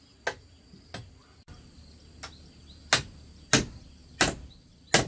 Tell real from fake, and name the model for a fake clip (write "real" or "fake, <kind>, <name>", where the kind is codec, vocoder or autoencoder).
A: real